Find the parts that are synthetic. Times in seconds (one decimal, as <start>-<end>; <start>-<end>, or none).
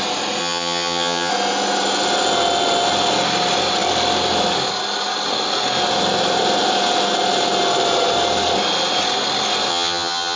0.4-1.3; 9.7-10.4